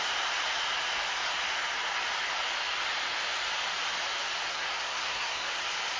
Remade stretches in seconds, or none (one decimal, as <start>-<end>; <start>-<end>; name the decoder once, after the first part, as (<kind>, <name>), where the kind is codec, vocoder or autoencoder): 4.5-5.5 (codec, SNAC)